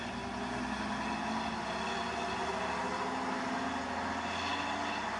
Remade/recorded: recorded